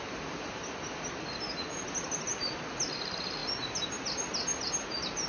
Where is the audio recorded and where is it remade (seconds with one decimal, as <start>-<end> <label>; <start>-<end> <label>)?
0.0-5.3 recorded